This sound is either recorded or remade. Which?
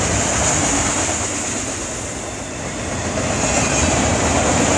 recorded